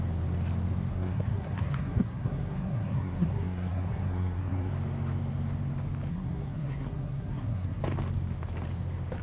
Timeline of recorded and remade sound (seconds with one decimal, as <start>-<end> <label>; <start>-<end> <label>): 0.0-0.9 recorded; 0.9-4.7 remade; 4.7-6.1 recorded; 6.1-7.8 remade; 7.8-9.2 recorded